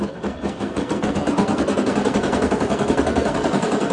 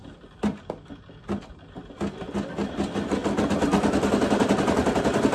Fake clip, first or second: first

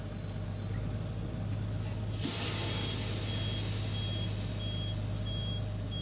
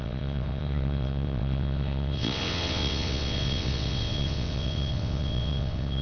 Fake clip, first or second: second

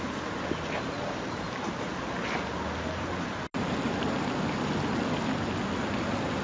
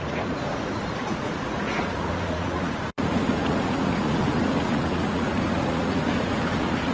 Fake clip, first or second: second